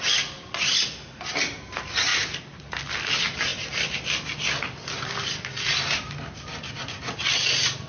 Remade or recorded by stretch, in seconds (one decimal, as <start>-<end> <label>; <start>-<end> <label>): 0.0-7.9 recorded